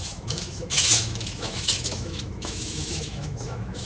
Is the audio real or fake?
fake